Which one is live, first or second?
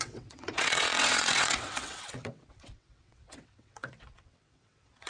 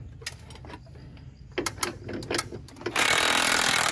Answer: second